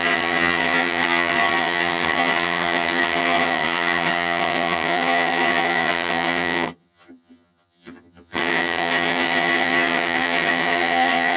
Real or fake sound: fake